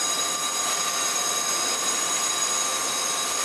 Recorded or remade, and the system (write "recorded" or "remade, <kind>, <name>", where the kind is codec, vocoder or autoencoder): recorded